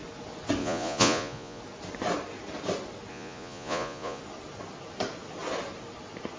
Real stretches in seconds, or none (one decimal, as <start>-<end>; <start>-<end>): 0.0-0.6; 1.6-3.1; 4.2-6.4